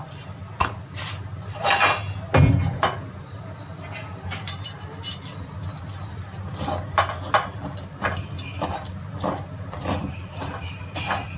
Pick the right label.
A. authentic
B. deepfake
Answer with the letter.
A